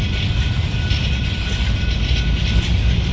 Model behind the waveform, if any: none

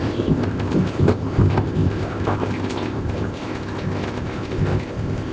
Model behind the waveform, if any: codec, ZipCodec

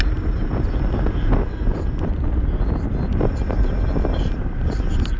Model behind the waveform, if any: none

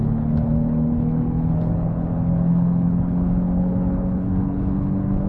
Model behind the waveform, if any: codec, HILCodec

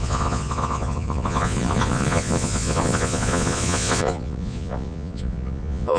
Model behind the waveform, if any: vocoder, Vocos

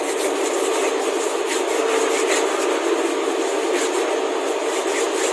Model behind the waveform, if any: none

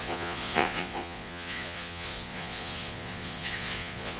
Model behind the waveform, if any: vocoder, Vocos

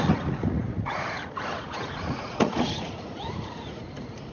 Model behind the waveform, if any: vocoder, Vocos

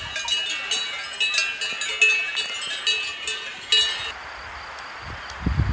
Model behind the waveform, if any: none